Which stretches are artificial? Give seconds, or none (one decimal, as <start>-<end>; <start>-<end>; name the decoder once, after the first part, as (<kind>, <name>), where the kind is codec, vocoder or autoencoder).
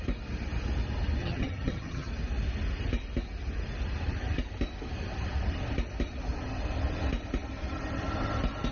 1.2-2.1 (vocoder, HiFi-GAN)